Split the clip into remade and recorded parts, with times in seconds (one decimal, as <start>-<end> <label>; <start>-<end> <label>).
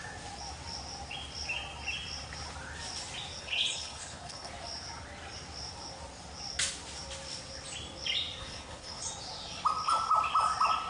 0.0-3.4 recorded; 3.4-4.5 remade; 4.5-8.4 recorded; 8.4-9.0 remade; 9.0-10.9 recorded